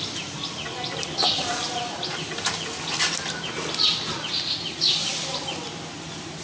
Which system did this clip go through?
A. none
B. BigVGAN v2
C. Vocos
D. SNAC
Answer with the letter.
A